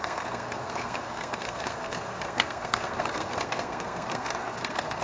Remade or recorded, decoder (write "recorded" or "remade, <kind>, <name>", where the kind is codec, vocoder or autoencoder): remade, codec, SNAC